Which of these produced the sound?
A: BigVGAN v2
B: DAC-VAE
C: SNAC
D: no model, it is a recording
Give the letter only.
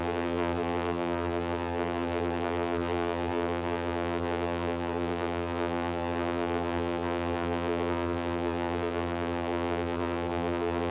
A